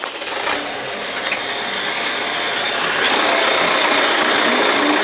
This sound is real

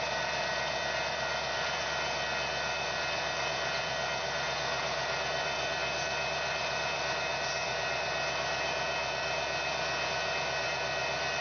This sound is fake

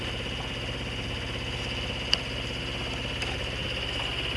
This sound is real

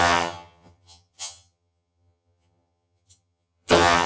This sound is fake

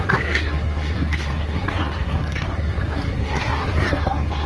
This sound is fake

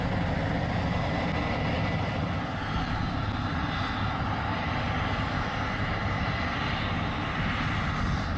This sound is real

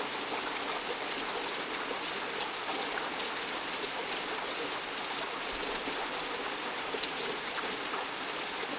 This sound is real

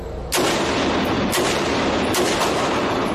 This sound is real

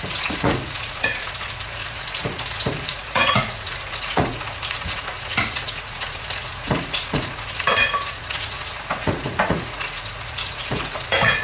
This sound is fake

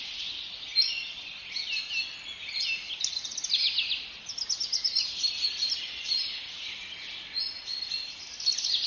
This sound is real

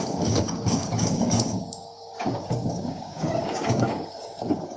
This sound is fake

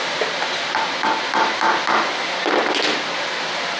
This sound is real